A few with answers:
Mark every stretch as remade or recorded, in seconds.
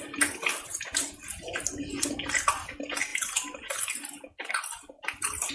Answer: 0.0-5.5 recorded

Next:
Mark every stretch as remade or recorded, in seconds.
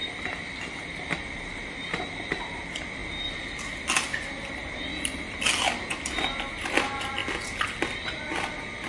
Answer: 0.0-8.9 recorded